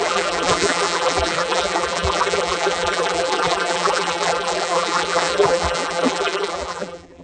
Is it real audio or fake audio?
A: fake